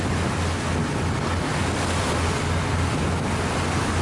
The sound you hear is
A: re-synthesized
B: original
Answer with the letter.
B